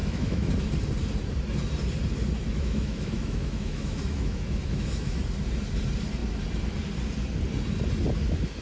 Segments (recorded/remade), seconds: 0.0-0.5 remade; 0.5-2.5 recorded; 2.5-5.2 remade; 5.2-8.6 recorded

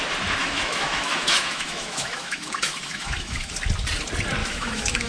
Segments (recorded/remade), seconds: 0.0-0.4 recorded; 0.4-3.5 remade; 3.5-4.4 recorded; 4.4-5.1 remade

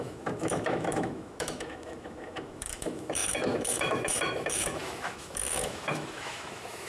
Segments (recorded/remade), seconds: 0.0-6.9 remade

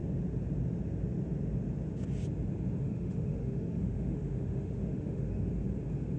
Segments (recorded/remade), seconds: 0.0-2.8 recorded; 2.8-5.5 remade; 5.5-6.2 recorded